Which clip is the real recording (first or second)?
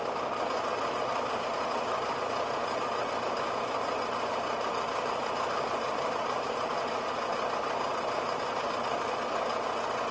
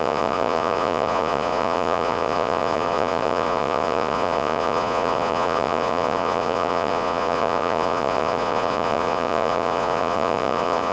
first